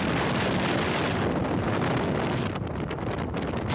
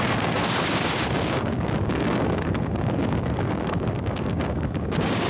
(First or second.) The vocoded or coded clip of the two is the second